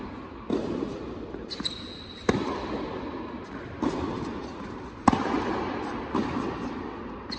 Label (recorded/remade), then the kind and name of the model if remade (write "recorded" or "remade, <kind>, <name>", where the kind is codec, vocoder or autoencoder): recorded